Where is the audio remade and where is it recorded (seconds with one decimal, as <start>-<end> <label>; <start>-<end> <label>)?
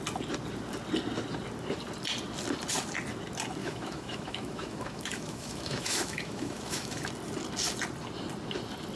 0.0-3.6 recorded; 3.6-7.1 remade; 7.1-9.0 recorded